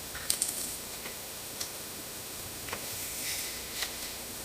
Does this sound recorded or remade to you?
remade